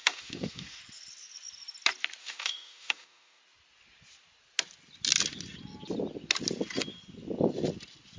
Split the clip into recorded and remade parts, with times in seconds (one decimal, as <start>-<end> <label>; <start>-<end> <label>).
0.0-0.8 remade; 0.8-2.2 recorded; 2.2-3.4 remade; 3.4-8.2 recorded